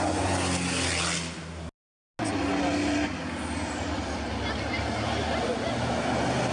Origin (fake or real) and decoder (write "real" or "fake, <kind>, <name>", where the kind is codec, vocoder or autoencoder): real